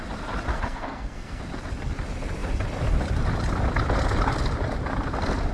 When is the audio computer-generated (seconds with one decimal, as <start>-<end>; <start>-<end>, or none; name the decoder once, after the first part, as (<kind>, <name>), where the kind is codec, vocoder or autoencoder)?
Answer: 0.5-1.4 (codec, SNAC)